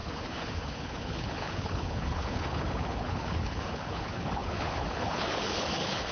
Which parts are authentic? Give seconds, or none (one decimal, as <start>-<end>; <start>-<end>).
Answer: none

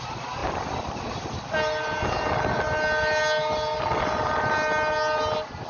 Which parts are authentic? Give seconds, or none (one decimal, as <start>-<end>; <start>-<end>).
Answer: 0.0-5.7

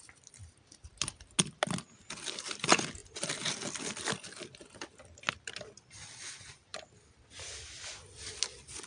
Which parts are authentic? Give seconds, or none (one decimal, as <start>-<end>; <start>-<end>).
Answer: 0.0-8.9

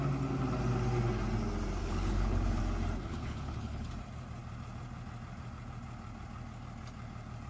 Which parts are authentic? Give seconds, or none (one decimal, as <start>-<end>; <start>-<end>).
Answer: 0.0-1.8; 2.6-3.1; 3.9-7.5

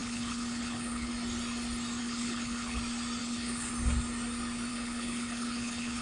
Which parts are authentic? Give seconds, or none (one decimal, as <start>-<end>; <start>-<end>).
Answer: 1.1-2.0; 2.8-3.2; 3.7-4.7

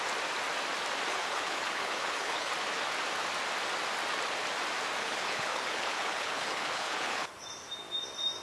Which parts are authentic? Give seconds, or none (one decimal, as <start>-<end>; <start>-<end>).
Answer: 0.0-1.1; 2.5-5.0; 7.3-8.4

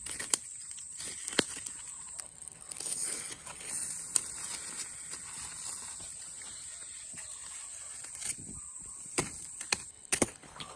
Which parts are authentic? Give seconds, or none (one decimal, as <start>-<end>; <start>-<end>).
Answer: 0.0-2.2; 3.7-9.9

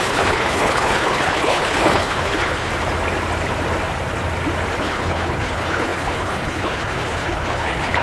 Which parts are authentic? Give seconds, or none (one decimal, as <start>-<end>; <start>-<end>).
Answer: 2.7-4.8